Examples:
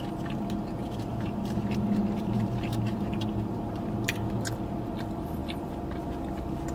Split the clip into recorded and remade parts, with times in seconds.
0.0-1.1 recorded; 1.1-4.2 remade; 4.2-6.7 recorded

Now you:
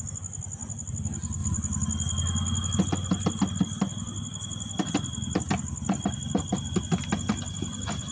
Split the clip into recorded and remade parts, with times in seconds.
0.0-8.1 recorded

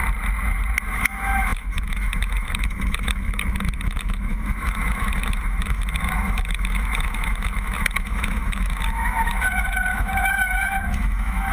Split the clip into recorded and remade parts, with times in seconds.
0.0-0.8 recorded; 0.8-11.5 remade

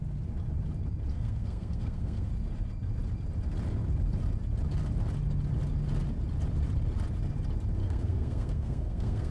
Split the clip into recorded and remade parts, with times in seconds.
0.0-1.1 recorded; 1.1-2.3 remade; 2.3-7.8 recorded; 7.8-9.3 remade

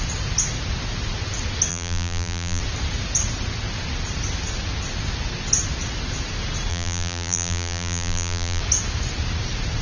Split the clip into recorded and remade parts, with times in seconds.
0.0-1.7 recorded; 1.7-2.6 remade; 2.6-6.7 recorded; 6.7-8.6 remade; 8.6-9.8 recorded

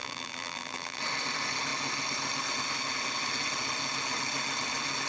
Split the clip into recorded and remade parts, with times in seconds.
0.0-1.0 remade; 1.0-5.1 recorded